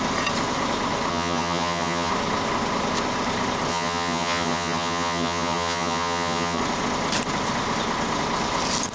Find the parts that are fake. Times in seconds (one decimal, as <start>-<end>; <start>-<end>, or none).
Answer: 1.1-2.1; 3.7-6.6